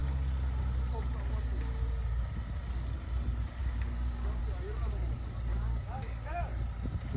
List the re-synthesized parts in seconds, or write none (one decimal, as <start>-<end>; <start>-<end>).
3.6-4.4; 5.5-6.5